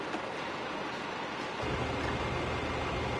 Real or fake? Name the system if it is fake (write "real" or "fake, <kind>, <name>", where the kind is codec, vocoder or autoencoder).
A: real